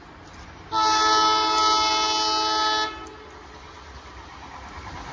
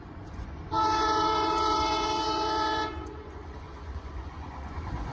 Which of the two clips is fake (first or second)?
second